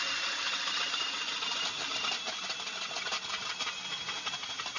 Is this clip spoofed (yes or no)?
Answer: no